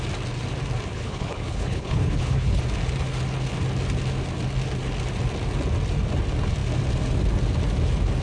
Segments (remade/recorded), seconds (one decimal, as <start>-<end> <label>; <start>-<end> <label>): 0.0-0.9 recorded; 0.9-2.6 remade; 2.6-8.2 recorded